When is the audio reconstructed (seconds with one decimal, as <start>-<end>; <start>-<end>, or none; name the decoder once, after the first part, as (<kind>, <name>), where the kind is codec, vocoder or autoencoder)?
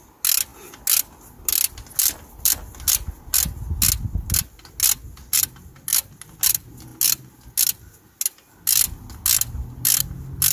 none